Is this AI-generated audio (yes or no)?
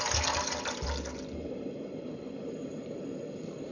no